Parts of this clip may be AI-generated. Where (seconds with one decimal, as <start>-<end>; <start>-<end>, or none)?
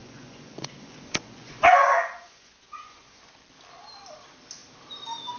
0.0-3.2